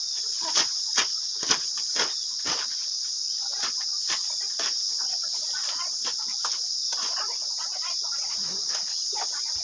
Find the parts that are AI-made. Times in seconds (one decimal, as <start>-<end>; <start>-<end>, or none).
5.6-6.2